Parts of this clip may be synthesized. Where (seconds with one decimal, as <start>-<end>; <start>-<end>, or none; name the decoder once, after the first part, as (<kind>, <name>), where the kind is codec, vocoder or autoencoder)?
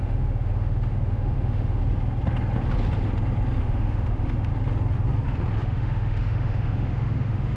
0.0-1.8 (autoencoder, DAC-VAE); 3.6-4.5; 5.6-7.6